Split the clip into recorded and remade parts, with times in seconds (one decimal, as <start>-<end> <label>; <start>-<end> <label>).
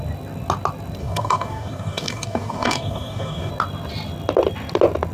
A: 0.0-1.0 recorded; 1.0-3.5 remade; 3.5-5.1 recorded